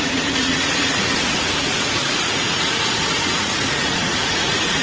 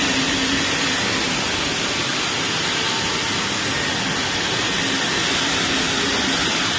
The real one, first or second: second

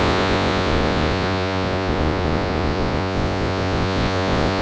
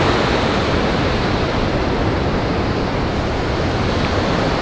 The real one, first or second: second